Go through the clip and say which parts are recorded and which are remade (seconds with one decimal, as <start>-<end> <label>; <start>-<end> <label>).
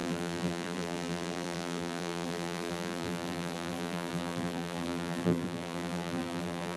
0.0-6.8 remade